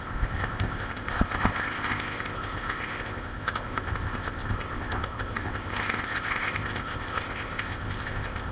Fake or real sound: fake